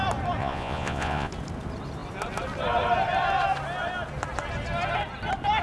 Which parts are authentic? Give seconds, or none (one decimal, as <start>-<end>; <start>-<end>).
0.0-0.4; 1.3-5.6